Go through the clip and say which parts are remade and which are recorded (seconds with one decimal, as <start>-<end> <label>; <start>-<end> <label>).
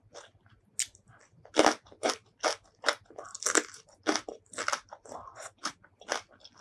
0.0-6.6 recorded